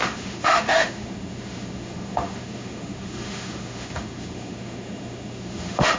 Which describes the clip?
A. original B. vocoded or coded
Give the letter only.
B